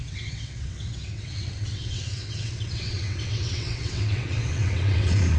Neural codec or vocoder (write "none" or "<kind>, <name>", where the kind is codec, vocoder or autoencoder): vocoder, WaveNeXt